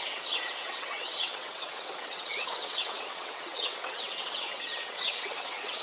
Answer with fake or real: fake